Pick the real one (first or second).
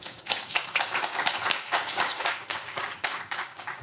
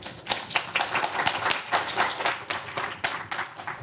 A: second